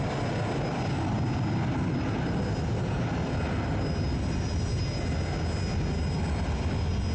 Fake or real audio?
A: real